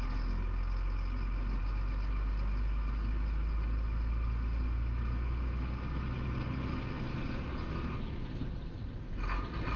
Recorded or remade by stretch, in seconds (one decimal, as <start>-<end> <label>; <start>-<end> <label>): 0.0-9.8 recorded